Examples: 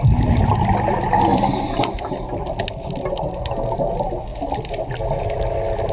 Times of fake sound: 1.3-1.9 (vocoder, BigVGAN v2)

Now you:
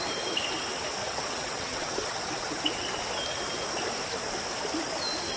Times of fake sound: 1.0-2.9 (vocoder, WaveNeXt)

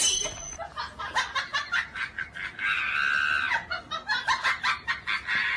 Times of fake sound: none